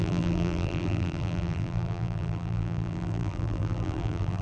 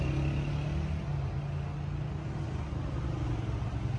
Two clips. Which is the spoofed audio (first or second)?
first